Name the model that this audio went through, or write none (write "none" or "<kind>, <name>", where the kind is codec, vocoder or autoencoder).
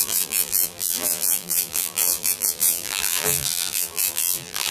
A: vocoder, BigVGAN v2